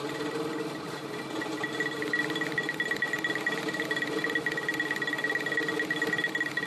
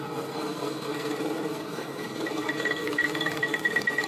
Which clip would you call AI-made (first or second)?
second